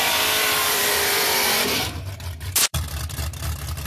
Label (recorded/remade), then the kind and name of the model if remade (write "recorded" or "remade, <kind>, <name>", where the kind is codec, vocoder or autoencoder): remade, vocoder, BigVGAN v2